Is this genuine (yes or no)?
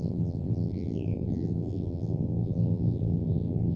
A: no